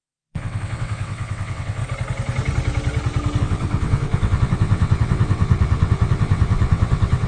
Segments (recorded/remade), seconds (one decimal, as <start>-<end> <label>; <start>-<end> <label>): 0.0-1.8 remade; 1.8-3.4 recorded; 3.4-7.3 remade